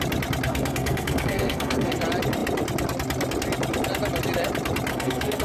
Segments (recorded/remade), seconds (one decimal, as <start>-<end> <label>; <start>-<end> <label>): 0.0-0.5 recorded; 0.5-2.0 remade; 2.0-4.9 recorded; 4.9-5.4 remade